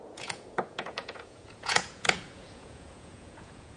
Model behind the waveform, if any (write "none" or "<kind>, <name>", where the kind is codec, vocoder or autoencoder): vocoder, Vocos